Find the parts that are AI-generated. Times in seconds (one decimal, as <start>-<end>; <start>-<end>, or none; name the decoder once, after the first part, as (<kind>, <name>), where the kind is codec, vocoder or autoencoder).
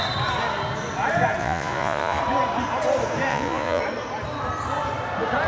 1.4-2.2 (vocoder, Vocos); 3.3-3.8